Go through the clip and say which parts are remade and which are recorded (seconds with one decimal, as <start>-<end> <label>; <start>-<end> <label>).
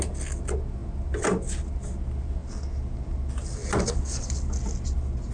0.0-5.3 recorded